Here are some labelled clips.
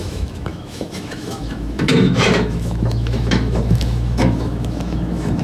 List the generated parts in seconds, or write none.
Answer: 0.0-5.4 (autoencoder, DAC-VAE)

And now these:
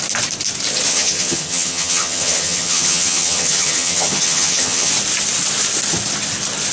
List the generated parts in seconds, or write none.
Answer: 0.9-4.9 (vocoder, HiFi-GAN)

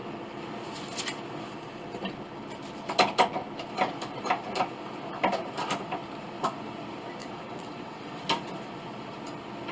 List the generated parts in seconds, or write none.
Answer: 7.2-8.2 (vocoder, WaveNeXt)